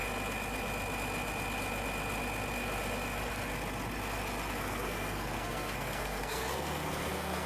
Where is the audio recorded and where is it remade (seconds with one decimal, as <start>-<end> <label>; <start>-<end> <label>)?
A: 0.0-4.5 recorded; 4.5-7.5 remade